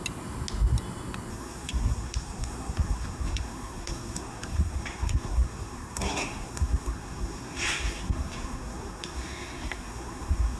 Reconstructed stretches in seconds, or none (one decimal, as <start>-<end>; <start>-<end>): 1.3-10.6